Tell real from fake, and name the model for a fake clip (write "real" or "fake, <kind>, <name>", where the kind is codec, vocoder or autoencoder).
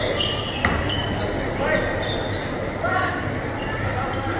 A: real